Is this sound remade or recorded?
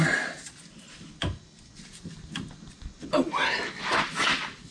recorded